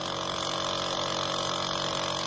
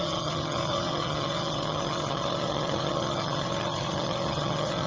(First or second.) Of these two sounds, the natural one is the first